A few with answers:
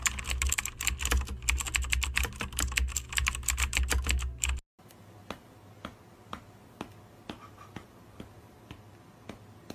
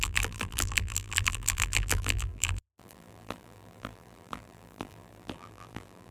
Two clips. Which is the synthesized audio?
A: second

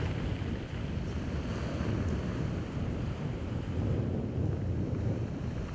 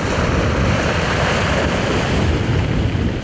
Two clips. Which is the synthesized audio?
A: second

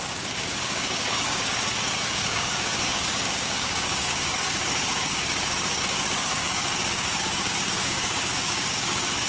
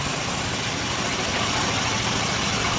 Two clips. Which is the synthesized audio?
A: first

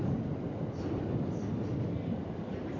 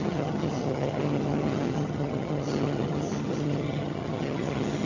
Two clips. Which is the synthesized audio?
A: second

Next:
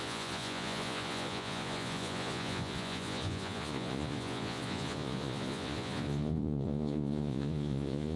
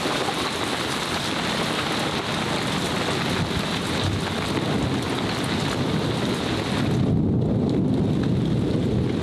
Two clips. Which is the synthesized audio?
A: first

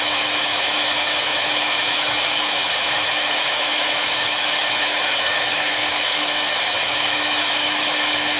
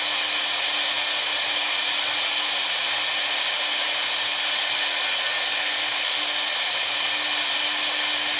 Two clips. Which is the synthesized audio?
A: first